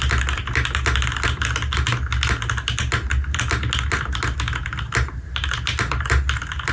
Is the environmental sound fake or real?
real